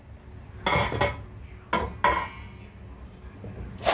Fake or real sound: real